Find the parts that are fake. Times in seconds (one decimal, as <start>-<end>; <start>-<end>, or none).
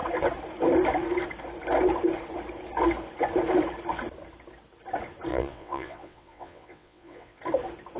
5.3-7.4